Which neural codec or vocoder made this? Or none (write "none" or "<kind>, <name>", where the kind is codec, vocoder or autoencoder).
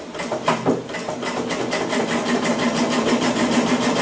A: none